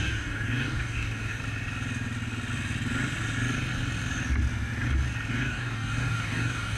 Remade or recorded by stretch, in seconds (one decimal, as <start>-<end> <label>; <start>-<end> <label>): 0.0-1.4 remade; 1.4-5.3 recorded; 5.3-6.8 remade